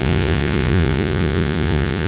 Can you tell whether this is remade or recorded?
remade